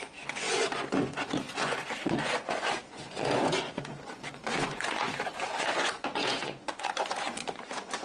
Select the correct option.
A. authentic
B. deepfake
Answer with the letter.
B